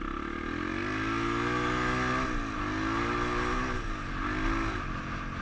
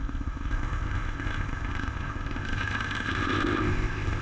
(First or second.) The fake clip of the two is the second